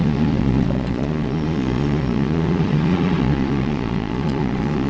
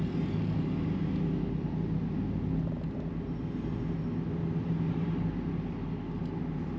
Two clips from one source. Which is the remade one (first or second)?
first